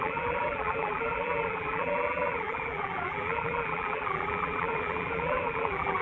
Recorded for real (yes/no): no